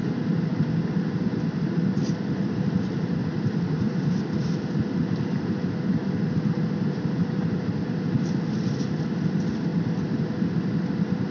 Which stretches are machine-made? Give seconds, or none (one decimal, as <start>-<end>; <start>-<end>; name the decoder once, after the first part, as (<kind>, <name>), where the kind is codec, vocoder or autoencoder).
none